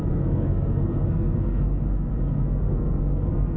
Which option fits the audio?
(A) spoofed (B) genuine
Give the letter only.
A